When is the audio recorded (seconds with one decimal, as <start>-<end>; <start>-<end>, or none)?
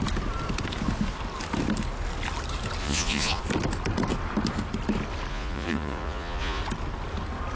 0.0-2.8; 3.4-5.3; 6.6-7.5